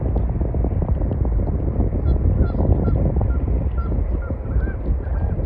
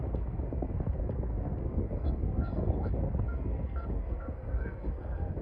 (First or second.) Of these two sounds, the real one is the first